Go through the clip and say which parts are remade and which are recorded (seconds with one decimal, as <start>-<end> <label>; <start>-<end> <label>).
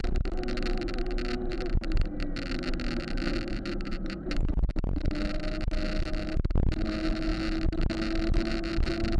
0.0-3.5 recorded; 3.5-5.0 remade; 5.0-9.2 recorded